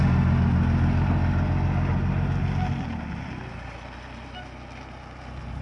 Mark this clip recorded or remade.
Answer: recorded